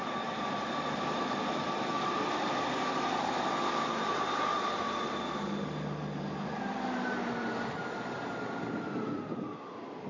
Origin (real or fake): real